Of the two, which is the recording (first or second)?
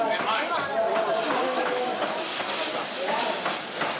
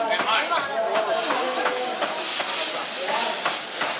second